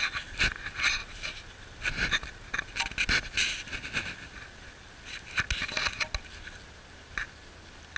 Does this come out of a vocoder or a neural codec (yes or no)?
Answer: no